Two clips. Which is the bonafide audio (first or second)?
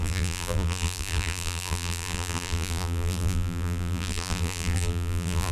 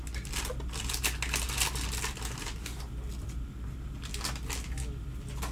second